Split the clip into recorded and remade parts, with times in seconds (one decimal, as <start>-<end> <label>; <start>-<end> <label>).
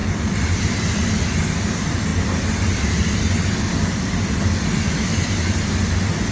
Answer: 0.0-2.1 remade; 2.1-2.8 recorded; 2.8-5.1 remade; 5.1-6.3 recorded